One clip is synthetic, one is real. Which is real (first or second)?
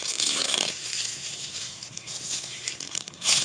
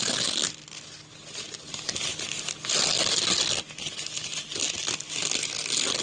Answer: second